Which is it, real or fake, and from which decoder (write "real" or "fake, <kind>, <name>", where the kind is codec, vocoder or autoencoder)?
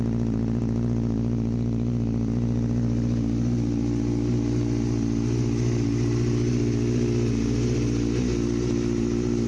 real